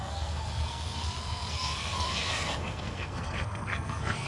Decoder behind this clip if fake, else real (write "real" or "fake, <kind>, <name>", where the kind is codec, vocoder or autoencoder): fake, codec, SNAC